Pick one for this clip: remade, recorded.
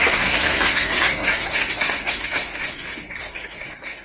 remade